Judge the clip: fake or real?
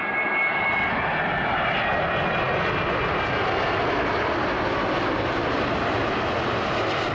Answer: real